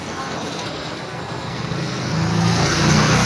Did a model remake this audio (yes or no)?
yes